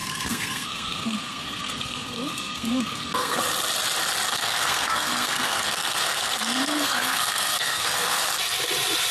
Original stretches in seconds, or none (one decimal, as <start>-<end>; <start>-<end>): 3.4-4.3; 8.2-9.1